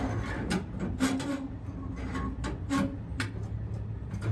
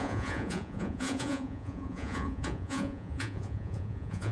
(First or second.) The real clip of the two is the first